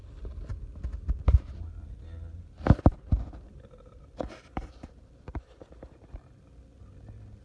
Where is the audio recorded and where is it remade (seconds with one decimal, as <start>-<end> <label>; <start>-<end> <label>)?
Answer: 0.0-2.9 recorded; 2.9-6.4 remade; 6.4-7.4 recorded